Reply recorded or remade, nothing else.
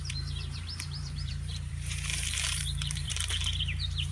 remade